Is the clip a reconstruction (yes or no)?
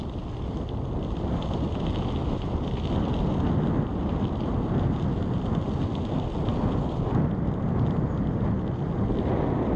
no